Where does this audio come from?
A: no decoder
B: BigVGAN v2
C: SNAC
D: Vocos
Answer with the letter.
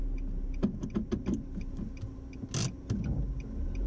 A